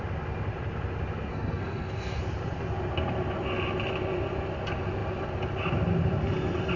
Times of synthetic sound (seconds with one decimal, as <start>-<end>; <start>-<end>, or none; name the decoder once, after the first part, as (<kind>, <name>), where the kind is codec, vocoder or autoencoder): 1.3-2.2 (codec, SNAC)